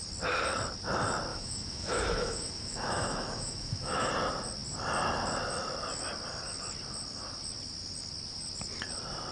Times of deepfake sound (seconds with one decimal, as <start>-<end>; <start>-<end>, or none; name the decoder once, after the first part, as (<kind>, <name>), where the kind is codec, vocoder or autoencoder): 1.3-4.1 (autoencoder, DAC-VAE)